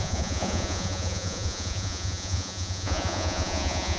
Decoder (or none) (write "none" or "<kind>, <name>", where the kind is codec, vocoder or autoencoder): vocoder, Vocos